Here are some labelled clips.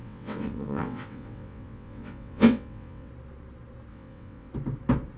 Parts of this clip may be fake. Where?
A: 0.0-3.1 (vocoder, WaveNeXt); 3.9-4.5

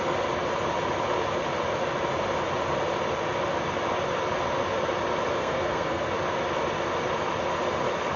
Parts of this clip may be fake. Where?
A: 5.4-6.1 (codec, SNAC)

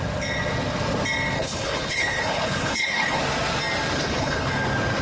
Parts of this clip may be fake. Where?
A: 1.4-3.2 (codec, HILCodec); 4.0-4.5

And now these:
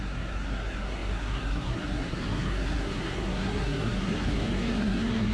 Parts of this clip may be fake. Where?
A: 0.0-5.3 (codec, SNAC)

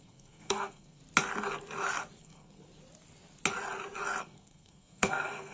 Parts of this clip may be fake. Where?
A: 0.0-1.0 (codec, SNAC); 2.2-2.7; 4.2-5.5

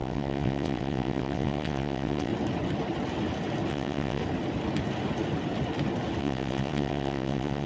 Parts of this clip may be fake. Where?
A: 0.0-2.3 (vocoder, WaveNeXt); 3.7-4.2; 6.2-7.7